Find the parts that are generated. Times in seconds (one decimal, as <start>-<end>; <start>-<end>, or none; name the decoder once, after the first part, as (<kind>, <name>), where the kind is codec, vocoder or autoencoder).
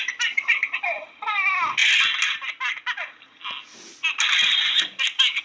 none